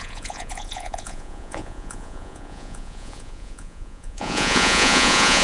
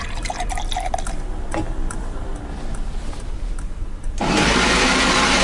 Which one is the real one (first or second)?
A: second